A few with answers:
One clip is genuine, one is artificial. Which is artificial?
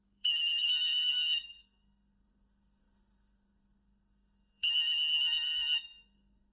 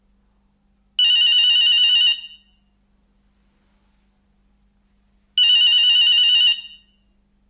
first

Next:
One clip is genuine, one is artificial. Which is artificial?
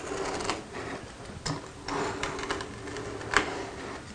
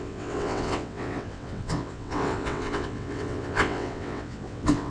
second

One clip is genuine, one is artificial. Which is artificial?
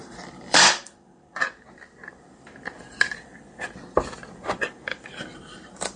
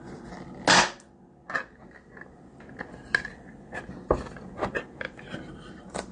first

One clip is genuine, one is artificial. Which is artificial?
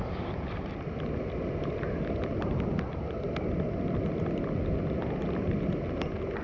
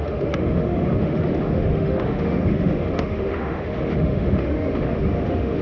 second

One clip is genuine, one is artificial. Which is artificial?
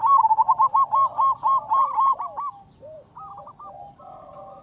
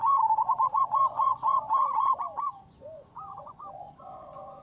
second